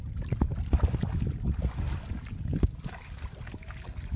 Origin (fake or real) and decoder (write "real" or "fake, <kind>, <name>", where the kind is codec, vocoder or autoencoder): real